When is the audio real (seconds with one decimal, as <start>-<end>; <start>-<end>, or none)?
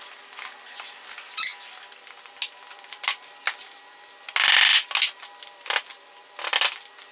0.0-7.1